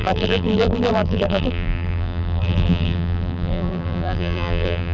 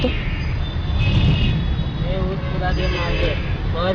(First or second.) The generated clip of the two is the first